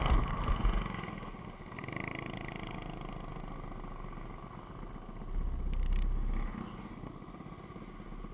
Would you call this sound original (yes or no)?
yes